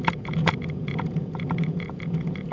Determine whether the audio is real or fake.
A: fake